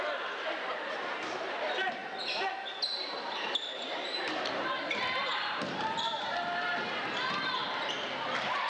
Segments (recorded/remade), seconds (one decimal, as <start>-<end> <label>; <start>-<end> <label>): 0.0-2.0 remade; 2.0-2.8 recorded; 2.8-7.6 remade; 7.6-8.7 recorded